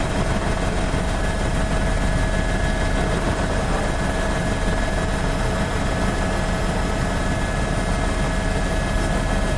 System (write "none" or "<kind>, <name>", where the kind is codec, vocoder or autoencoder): none